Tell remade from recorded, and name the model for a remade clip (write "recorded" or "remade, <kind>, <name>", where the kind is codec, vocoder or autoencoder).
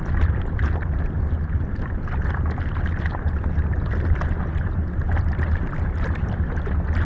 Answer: recorded